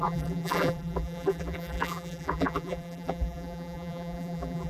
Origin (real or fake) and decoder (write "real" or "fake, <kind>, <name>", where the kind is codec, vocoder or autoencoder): fake, vocoder, BigVGAN v2